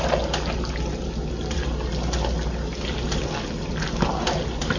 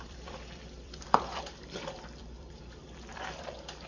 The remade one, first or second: second